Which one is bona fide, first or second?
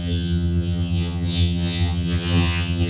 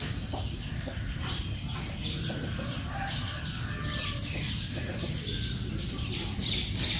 second